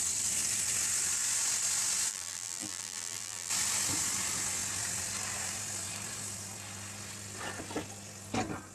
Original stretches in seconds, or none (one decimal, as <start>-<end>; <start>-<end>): 0.0-2.1; 3.5-8.7

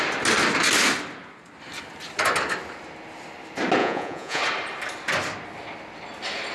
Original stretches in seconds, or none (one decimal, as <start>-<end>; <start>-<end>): 0.0-3.8; 4.4-6.5